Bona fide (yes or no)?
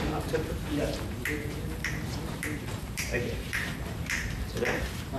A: no